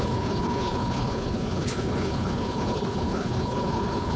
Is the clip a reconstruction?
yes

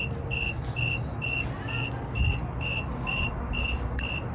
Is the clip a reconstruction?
no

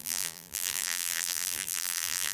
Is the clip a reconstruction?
yes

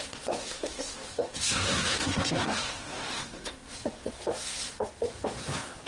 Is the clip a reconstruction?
yes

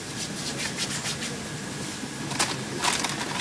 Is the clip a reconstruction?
no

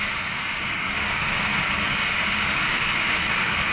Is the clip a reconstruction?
yes